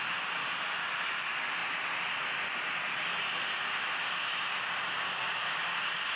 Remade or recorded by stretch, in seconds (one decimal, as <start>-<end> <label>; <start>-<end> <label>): 0.0-6.2 recorded